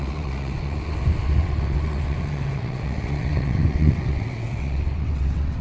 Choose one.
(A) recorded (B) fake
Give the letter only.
B